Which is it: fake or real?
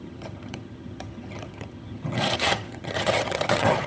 fake